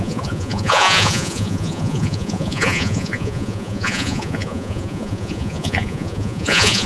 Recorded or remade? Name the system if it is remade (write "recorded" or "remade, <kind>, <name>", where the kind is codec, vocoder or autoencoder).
remade, vocoder, Vocos